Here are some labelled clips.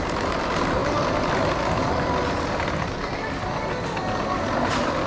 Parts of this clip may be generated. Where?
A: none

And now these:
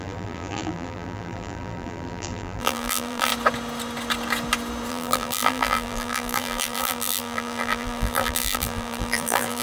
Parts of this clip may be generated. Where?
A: 0.0-3.3; 4.9-9.6

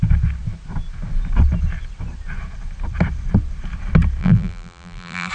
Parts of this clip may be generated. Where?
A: 4.2-5.3

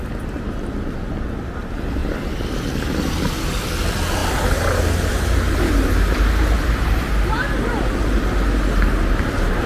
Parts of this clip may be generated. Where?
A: 2.0-3.5

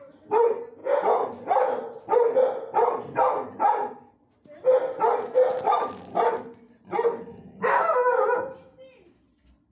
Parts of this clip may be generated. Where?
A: 0.0-3.8; 7.8-9.7

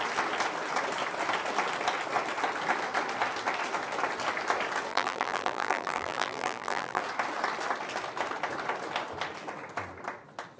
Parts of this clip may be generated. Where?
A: 4.9-7.0